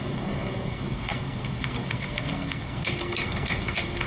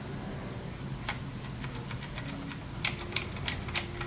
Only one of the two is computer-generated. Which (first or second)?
first